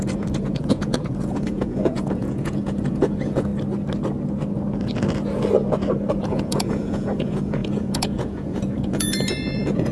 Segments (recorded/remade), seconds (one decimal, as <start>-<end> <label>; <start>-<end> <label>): 0.0-3.5 remade; 3.5-6.2 recorded; 6.2-9.9 remade